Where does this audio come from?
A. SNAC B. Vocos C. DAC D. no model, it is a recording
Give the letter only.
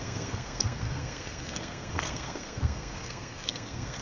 A